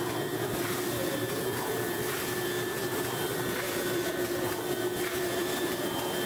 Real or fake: fake